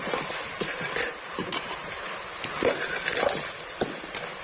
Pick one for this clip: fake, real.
real